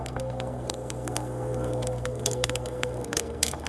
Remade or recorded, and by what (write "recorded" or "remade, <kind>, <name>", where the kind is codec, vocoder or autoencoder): remade, codec, SNAC